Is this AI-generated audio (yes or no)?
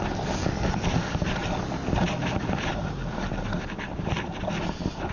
no